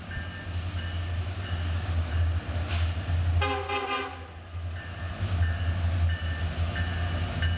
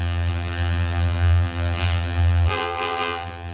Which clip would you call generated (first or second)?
second